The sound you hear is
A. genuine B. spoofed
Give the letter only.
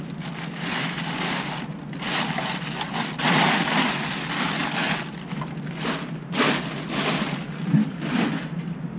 A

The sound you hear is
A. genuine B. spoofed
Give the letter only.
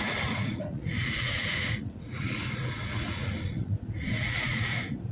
B